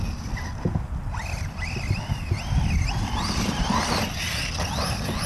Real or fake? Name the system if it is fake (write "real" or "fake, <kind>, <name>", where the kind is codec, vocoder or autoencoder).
real